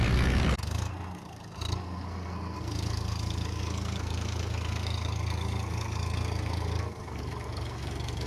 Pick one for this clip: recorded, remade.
remade